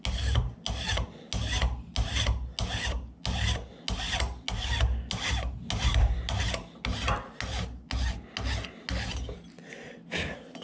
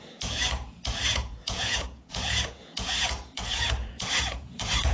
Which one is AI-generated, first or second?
second